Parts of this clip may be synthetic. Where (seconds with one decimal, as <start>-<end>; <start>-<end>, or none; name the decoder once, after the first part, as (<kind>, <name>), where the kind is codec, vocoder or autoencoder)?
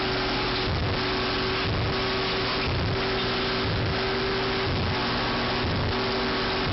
none